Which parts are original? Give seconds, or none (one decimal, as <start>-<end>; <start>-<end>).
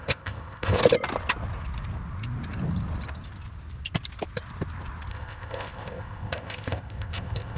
0.8-5.1